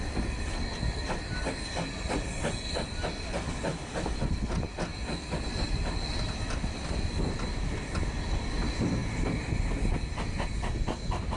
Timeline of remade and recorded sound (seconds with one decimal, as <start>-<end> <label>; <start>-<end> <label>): 0.0-11.4 recorded